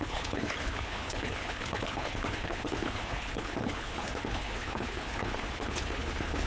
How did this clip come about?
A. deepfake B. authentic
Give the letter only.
A